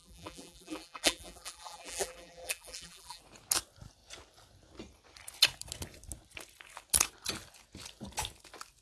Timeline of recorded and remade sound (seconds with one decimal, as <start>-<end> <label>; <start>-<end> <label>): 0.0-3.2 remade; 3.2-8.8 recorded